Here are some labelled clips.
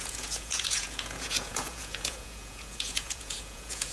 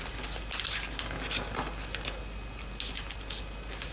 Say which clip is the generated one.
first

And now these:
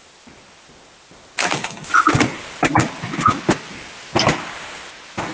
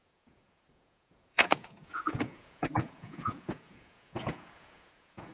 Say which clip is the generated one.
second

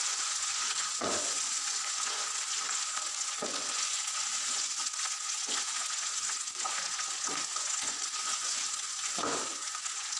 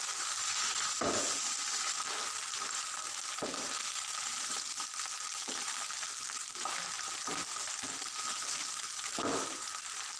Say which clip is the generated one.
first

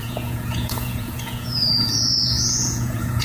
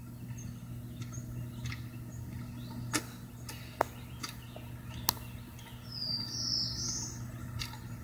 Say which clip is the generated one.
first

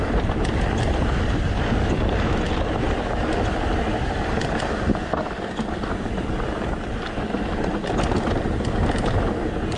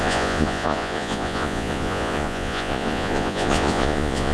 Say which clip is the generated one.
second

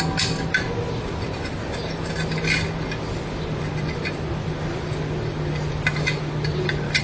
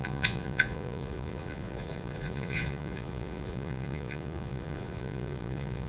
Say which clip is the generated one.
second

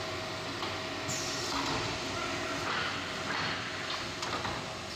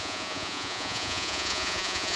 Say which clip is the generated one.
second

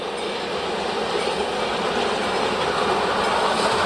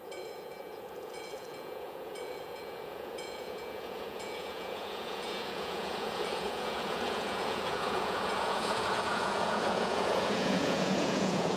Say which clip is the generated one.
second